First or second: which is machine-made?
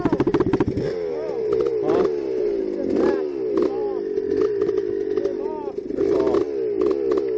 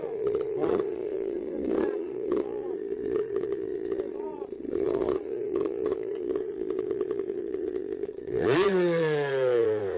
second